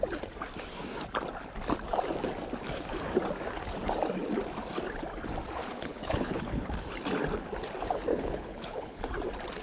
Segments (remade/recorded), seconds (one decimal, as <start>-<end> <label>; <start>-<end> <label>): 0.0-5.6 recorded; 5.6-6.7 remade; 6.7-8.1 recorded; 8.1-9.0 remade; 9.0-9.6 recorded